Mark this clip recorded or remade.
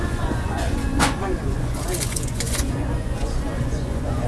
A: remade